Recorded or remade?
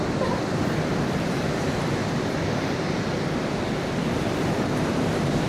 remade